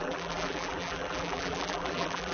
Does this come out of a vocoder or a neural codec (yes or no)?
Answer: yes